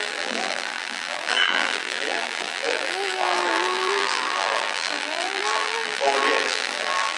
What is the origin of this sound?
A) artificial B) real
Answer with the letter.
A